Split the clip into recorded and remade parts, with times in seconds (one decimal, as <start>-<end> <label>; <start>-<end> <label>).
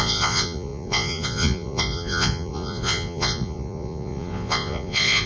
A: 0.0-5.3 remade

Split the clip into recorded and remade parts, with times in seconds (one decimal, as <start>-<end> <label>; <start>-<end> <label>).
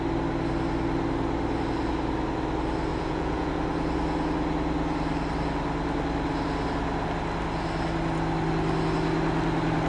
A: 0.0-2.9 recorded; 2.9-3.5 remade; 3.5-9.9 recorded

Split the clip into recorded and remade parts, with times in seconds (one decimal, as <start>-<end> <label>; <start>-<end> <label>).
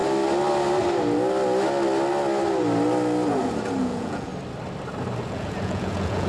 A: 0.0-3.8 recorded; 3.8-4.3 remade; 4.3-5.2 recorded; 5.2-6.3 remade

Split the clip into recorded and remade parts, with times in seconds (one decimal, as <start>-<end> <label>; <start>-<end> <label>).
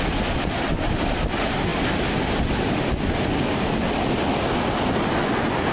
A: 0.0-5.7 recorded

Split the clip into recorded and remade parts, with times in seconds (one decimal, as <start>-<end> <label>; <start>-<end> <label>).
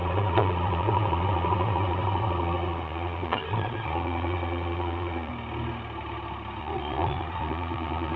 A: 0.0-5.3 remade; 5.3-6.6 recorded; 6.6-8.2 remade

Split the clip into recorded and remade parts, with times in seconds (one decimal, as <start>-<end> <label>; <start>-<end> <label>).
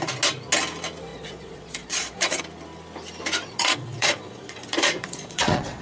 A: 0.0-1.1 recorded; 1.1-2.4 remade; 2.4-3.4 recorded; 3.4-5.8 remade